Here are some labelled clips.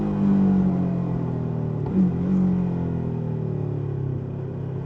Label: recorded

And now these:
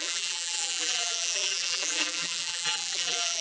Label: remade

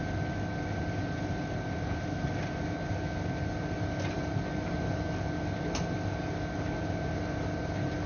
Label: recorded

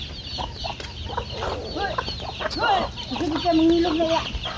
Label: recorded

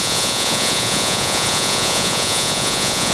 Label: remade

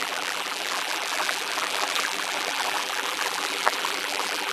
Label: remade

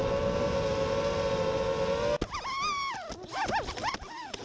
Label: recorded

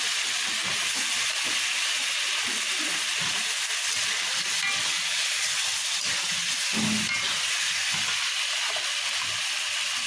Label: recorded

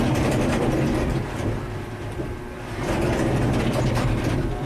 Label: remade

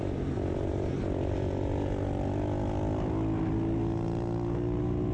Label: recorded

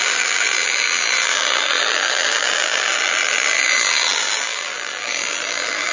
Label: remade